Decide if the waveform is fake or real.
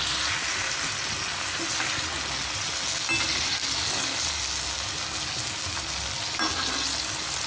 real